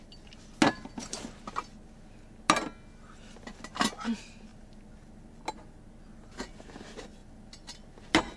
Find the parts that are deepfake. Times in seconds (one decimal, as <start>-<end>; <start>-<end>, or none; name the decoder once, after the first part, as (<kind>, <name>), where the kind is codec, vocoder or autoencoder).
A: none